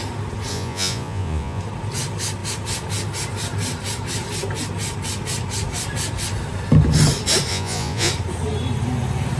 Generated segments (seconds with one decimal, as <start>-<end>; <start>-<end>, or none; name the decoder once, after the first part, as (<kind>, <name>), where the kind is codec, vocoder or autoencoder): 0.5-1.6 (vocoder, Vocos); 7.5-8.1